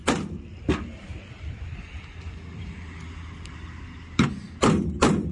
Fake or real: real